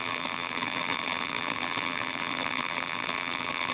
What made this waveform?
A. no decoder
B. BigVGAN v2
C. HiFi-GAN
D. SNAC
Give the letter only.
B